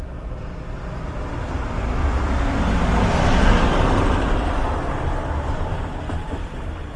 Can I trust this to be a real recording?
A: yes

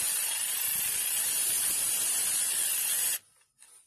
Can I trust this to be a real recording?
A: yes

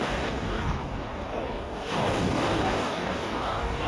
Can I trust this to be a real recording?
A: no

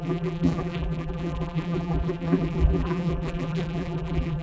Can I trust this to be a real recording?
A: no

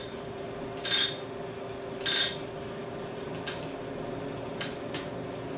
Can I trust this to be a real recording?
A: yes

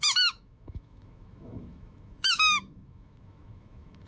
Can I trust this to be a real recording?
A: no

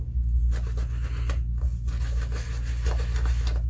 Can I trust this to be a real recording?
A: yes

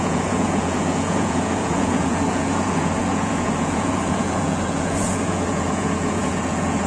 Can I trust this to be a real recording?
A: no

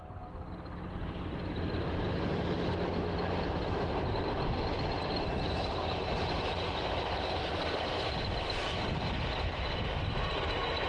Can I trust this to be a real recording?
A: yes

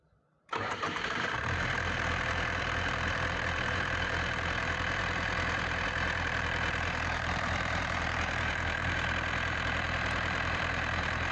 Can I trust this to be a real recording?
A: no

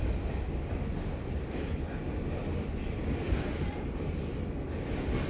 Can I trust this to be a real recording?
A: yes